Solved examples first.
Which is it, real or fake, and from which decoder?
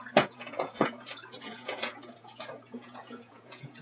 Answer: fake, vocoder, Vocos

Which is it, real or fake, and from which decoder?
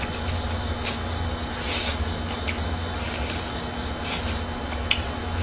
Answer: real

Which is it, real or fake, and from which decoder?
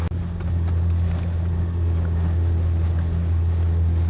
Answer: real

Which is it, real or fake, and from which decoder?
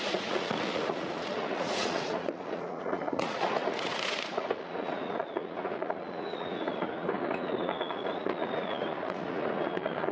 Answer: fake, vocoder, Vocos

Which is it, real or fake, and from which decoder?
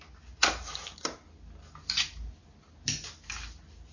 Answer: real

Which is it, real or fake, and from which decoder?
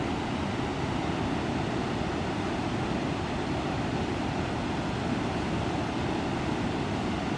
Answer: real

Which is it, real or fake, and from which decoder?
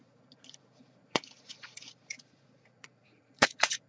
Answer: fake, vocoder, Vocos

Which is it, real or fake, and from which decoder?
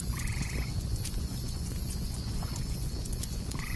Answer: fake, vocoder, Vocos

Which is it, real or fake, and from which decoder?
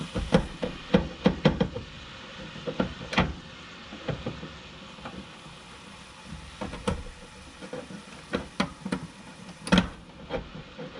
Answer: real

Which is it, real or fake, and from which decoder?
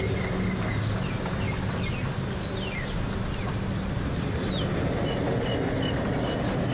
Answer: real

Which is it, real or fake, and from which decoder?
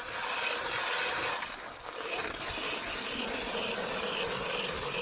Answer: real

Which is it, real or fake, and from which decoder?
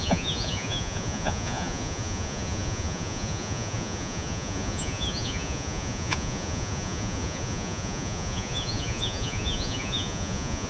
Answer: fake, vocoder, Vocos